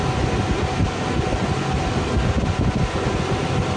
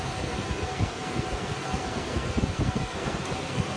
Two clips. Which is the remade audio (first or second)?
second